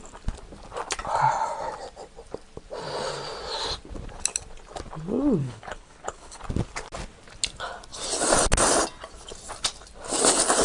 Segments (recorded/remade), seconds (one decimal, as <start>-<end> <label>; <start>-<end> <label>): 0.0-5.4 recorded; 5.4-6.4 remade; 6.4-10.6 recorded